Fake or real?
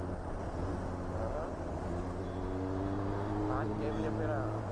real